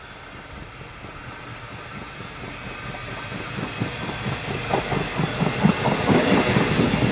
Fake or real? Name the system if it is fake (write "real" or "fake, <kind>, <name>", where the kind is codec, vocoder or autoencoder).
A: real